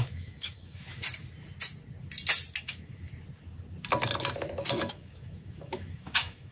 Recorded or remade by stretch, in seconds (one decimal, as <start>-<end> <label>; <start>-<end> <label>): 0.0-1.0 remade; 1.0-2.6 recorded; 2.6-3.1 remade; 3.1-4.8 recorded; 4.8-6.5 remade